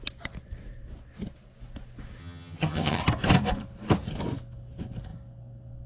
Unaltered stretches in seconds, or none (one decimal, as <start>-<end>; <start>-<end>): 0.0-2.2; 3.0-5.9